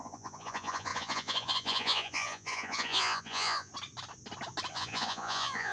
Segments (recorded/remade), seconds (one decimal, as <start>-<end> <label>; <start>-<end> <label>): 0.0-3.7 remade; 3.7-4.7 recorded; 4.7-5.7 remade